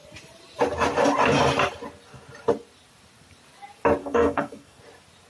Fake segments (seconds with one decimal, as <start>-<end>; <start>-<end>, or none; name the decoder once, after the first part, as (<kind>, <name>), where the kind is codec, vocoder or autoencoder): 4.0-4.8 (codec, SNAC)